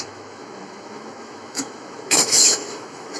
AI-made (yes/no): yes